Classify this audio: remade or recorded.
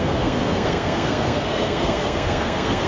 remade